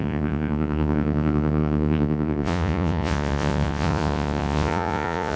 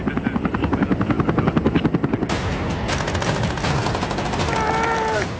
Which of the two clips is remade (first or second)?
first